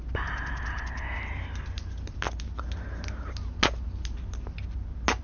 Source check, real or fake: real